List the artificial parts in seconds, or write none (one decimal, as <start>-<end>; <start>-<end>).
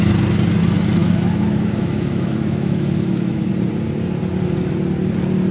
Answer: 1.0-3.5